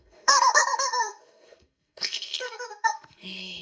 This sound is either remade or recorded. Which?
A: remade